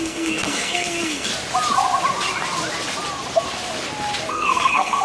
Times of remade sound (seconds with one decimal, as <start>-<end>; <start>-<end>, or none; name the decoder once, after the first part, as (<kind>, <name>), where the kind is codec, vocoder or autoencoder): 0.0-1.3 (codec, SNAC); 4.3-5.0